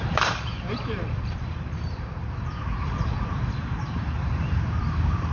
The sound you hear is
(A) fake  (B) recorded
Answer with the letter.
A